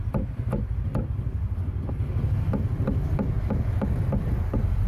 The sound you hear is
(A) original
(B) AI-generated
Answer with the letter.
A